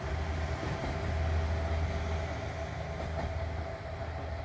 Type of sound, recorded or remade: recorded